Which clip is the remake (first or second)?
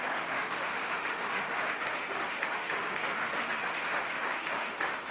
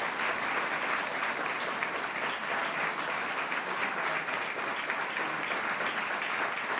first